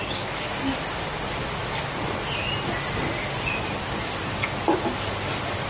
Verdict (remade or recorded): recorded